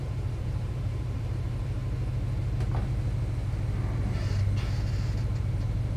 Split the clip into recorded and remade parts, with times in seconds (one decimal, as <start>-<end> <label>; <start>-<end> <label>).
0.0-1.8 remade; 1.8-5.4 recorded; 5.4-6.0 remade